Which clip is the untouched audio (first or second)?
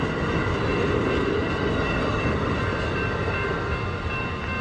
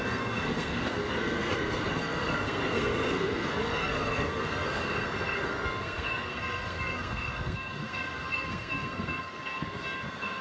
first